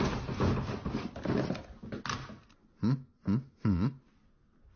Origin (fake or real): real